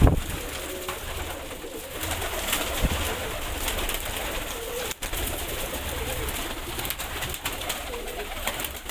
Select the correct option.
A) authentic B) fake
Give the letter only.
A